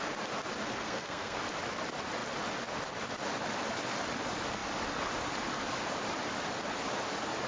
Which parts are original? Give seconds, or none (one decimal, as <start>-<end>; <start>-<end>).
0.0-0.8; 1.4-7.5